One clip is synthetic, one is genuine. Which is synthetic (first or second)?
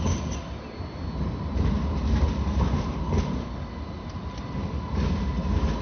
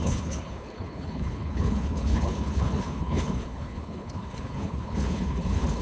second